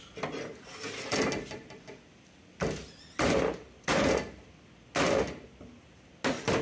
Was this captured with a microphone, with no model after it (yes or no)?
yes